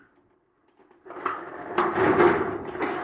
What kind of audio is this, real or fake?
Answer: real